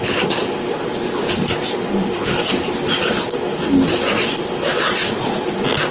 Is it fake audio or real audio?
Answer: real